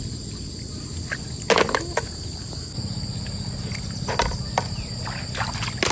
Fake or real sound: real